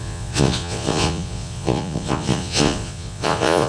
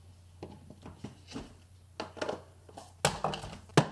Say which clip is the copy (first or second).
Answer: first